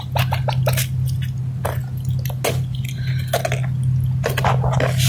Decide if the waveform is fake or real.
real